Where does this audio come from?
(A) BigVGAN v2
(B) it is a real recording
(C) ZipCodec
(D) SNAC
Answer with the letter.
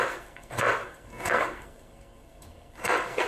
D